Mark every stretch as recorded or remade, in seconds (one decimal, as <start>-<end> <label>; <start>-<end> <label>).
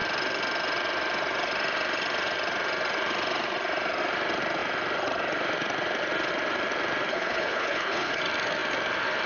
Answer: 0.0-7.1 recorded; 7.1-8.2 remade; 8.2-9.3 recorded